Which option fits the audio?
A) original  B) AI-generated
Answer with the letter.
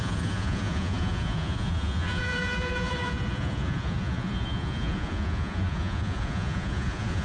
B